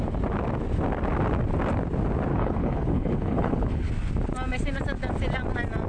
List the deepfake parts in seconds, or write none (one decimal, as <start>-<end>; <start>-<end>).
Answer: 2.3-3.9